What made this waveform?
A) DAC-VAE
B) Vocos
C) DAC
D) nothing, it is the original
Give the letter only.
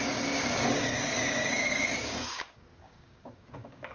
C